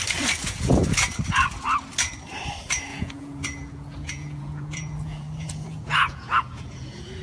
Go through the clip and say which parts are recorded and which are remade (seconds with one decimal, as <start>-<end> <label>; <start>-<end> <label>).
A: 0.0-0.4 recorded; 0.4-1.1 remade; 1.1-2.9 recorded; 2.9-7.2 remade